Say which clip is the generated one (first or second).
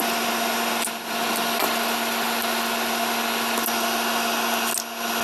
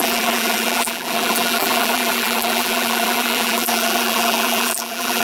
second